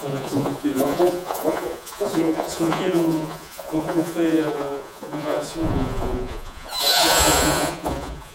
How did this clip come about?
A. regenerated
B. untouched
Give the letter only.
A